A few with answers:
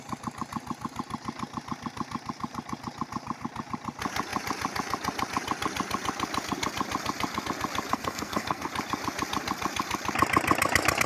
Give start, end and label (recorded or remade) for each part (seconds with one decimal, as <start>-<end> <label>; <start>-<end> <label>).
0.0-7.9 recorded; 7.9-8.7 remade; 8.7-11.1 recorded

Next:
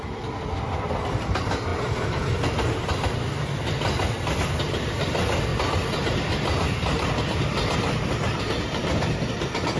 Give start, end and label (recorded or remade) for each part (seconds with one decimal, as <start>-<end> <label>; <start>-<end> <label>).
0.0-9.8 recorded

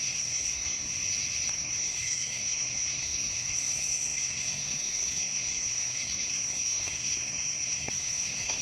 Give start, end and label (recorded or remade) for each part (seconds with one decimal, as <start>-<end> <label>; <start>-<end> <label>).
0.0-0.9 remade; 0.9-1.5 recorded; 1.5-8.6 remade

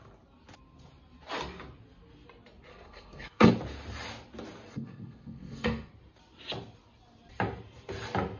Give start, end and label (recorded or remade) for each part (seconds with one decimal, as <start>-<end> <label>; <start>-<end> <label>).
0.0-2.7 recorded; 2.7-3.5 remade; 3.5-4.7 recorded; 4.7-5.9 remade; 5.9-8.4 recorded

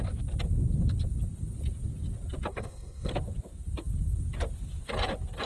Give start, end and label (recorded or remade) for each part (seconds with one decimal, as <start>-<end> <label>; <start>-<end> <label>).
0.0-2.5 recorded; 2.5-3.1 remade; 3.1-5.5 recorded

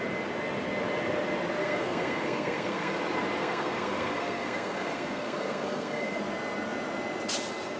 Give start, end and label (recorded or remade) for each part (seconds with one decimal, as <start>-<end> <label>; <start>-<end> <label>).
0.0-1.6 recorded; 1.6-3.0 remade; 3.0-3.4 recorded; 3.4-6.2 remade; 6.2-7.8 recorded

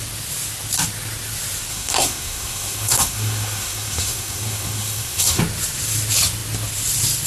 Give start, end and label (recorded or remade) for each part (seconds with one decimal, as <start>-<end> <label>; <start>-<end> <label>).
0.0-1.7 recorded; 1.7-5.4 remade; 5.4-7.3 recorded

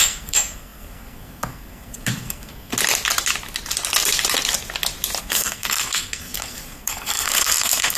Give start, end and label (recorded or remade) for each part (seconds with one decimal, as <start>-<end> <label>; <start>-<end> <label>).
0.0-2.7 remade; 2.7-5.2 recorded; 5.2-8.0 remade